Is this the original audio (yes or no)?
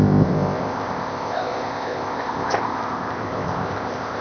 no